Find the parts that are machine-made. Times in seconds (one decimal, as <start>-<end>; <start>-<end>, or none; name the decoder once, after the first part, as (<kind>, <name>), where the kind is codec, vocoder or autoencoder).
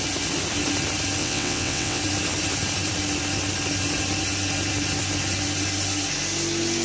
1.2-2.0 (vocoder, WaveNeXt)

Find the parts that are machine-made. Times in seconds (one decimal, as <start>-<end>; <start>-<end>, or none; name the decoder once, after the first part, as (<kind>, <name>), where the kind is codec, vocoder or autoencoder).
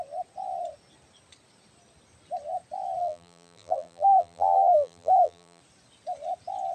3.0-5.6 (vocoder, BigVGAN v2)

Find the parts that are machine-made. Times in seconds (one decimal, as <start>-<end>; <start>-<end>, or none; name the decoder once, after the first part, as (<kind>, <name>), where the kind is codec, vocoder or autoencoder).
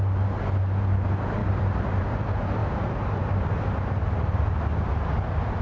1.4-2.0 (vocoder, BigVGAN v2)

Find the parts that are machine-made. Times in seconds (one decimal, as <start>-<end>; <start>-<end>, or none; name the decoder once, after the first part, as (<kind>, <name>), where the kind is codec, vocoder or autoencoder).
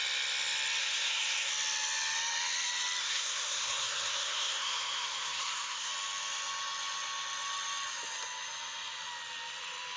0.8-1.5 (codec, SNAC); 3.0-5.9